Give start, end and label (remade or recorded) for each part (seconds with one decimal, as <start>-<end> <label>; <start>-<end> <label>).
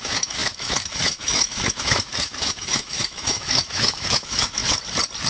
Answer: 0.0-4.6 remade; 4.6-5.3 recorded